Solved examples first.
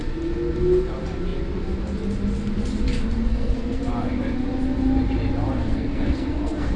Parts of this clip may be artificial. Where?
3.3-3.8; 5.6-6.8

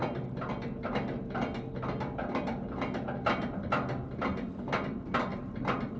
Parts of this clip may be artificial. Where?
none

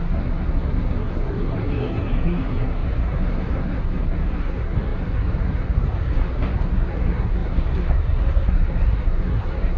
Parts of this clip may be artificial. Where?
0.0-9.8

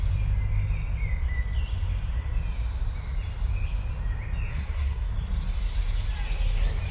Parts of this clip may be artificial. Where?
4.5-5.1

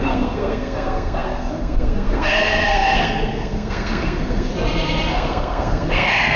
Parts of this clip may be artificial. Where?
0.0-4.5; 5.1-6.4